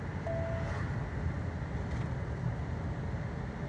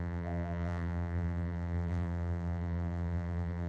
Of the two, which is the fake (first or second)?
second